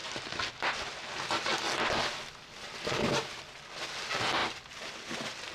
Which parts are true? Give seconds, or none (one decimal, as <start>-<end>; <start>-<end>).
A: 0.0-2.3